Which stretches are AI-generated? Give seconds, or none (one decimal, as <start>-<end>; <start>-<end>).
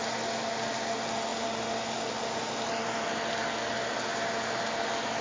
none